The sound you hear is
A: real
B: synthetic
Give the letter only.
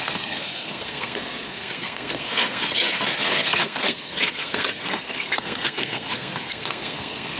B